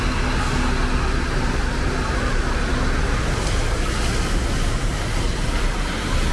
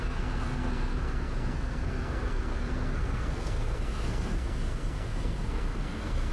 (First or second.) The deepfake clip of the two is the second